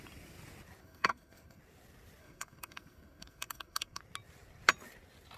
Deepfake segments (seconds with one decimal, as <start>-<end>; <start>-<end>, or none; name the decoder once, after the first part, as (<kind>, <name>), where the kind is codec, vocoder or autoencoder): 0.8-1.6 (codec, SNAC); 2.2-4.0